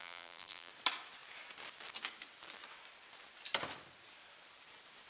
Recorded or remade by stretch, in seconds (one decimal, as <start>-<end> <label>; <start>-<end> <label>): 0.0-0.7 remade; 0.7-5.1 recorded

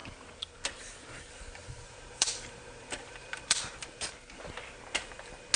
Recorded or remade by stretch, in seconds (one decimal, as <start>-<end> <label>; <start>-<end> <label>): 0.0-1.6 recorded; 1.6-3.7 remade; 3.7-5.6 recorded

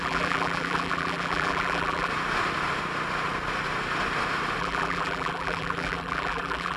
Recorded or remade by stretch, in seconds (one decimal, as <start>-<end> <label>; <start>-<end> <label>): 0.0-2.1 remade; 2.1-4.6 recorded; 4.6-6.8 remade

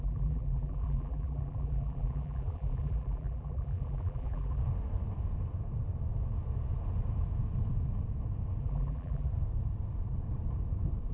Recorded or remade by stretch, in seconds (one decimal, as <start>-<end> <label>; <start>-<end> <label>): 0.0-4.6 remade; 4.6-8.6 recorded; 8.6-9.3 remade; 9.3-11.1 recorded

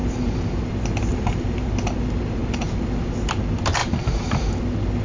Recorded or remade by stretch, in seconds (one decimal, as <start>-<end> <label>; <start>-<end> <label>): 0.0-0.7 remade; 0.7-1.1 recorded; 1.1-1.7 remade; 1.7-3.8 recorded; 3.8-4.4 remade; 4.4-5.0 recorded

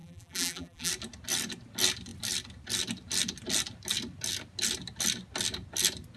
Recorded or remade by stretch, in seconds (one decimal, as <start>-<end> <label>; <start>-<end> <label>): 0.0-0.9 remade; 0.9-6.2 recorded